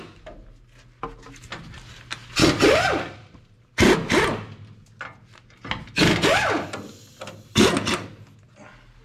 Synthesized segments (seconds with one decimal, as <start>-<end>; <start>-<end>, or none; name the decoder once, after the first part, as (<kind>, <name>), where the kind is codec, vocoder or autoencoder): none